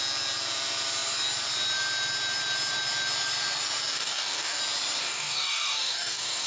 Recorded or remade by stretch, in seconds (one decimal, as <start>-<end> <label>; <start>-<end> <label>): 0.0-3.9 recorded; 3.9-4.6 remade; 4.6-5.0 recorded; 5.0-6.5 remade